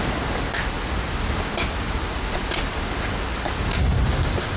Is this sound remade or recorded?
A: recorded